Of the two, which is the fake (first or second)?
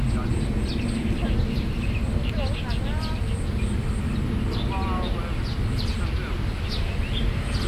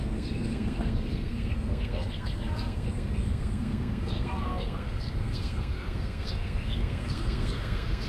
second